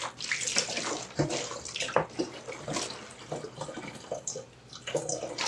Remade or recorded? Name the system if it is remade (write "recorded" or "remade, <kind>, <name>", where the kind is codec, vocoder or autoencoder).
recorded